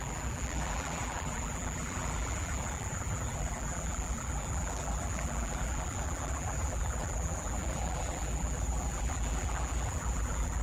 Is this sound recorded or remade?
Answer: remade